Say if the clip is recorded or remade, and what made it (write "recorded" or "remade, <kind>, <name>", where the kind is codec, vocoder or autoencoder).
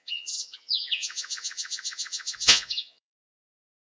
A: remade, vocoder, Vocos